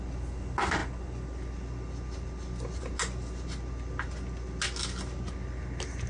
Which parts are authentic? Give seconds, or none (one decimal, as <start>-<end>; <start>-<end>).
0.0-6.1